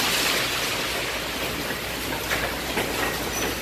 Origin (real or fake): real